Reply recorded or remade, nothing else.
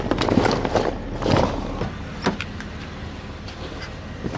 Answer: recorded